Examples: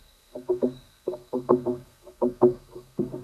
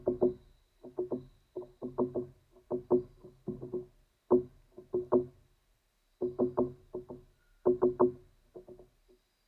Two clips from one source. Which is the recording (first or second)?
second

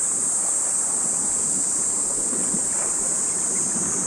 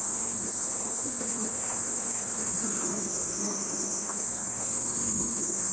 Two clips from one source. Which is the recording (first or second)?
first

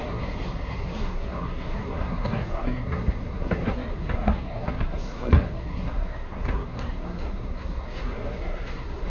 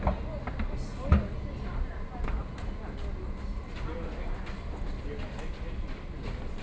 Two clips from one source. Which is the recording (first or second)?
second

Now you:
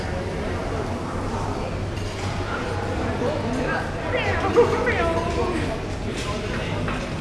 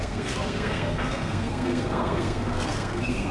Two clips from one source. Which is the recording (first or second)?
first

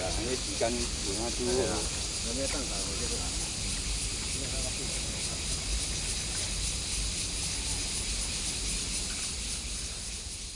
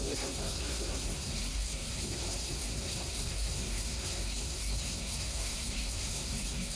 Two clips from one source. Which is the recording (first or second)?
first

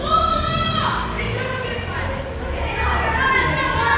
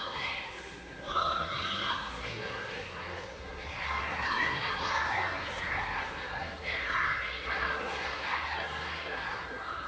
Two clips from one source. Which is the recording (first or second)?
first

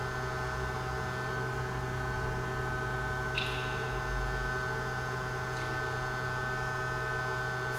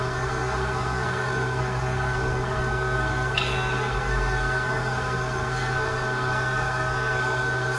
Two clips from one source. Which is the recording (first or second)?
first